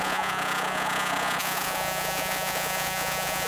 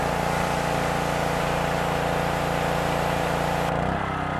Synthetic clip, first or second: first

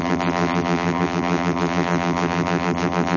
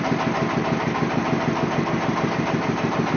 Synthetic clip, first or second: first